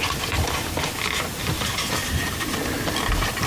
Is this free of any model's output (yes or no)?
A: yes